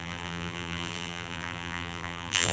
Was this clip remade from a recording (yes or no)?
yes